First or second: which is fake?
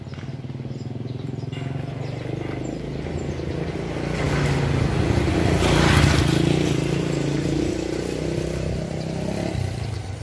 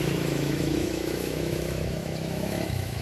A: second